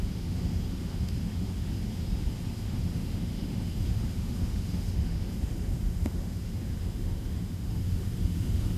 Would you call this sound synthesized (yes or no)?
yes